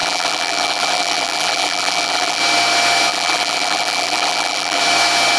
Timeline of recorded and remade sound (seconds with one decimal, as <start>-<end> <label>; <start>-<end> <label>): 0.0-2.4 remade; 2.4-3.1 recorded; 3.1-4.8 remade; 4.8-5.4 recorded